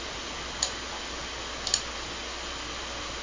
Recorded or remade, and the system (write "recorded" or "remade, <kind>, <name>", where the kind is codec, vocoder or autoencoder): recorded